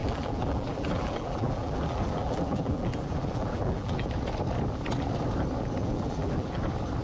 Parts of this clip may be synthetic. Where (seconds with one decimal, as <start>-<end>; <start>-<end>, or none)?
0.0-4.1; 5.8-6.6